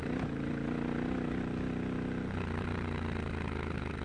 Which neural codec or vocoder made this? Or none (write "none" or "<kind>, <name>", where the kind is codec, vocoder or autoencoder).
none